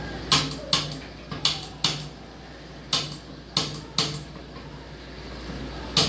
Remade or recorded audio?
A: recorded